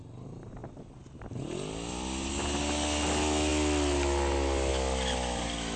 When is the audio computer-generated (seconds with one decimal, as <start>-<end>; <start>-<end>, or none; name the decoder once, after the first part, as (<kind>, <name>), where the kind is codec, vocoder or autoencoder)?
none